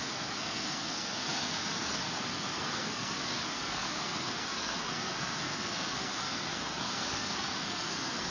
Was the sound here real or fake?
fake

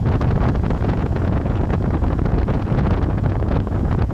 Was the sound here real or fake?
fake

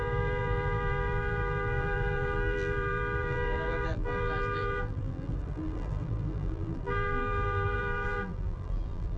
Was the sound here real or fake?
fake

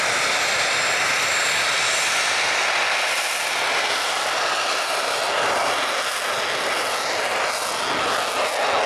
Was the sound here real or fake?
real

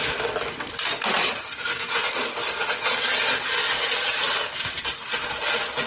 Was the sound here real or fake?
real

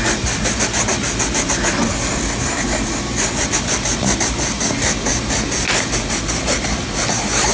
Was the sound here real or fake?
real